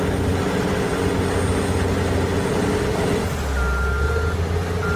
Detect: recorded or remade recorded